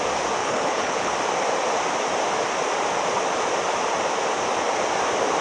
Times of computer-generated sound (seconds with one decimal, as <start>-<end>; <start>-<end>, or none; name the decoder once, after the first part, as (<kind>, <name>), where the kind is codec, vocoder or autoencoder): 0.4-1.1 (codec, HILCodec)